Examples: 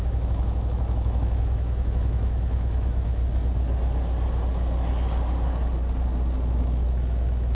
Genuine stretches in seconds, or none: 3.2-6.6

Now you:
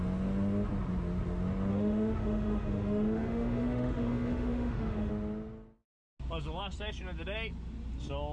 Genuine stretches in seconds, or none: 0.0-1.7; 5.1-8.3

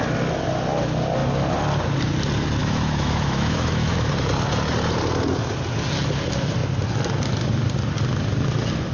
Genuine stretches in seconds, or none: 0.0-2.6; 4.1-8.9

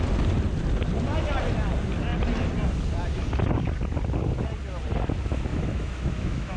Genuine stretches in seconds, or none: 0.0-5.5

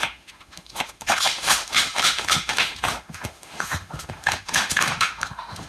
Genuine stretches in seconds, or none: none

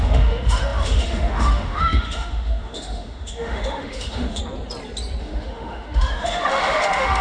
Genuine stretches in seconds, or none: 4.4-5.2